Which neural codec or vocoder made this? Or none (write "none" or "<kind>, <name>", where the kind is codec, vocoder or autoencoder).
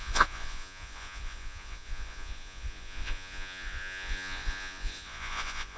vocoder, Vocos